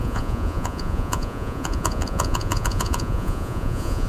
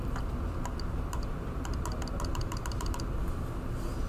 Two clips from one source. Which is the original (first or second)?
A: second